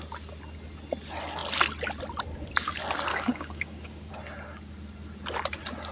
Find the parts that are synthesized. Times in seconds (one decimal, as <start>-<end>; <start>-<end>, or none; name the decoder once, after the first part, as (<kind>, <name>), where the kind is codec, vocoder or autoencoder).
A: 3.1-4.1 (codec, DAC)